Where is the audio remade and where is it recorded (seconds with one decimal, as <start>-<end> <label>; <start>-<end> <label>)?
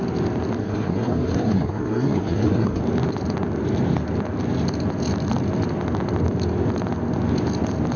0.0-0.6 recorded; 0.6-2.8 remade; 2.8-8.0 recorded